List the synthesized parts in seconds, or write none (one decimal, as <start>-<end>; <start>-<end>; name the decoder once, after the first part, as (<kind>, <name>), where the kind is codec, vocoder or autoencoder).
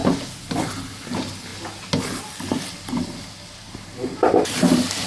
none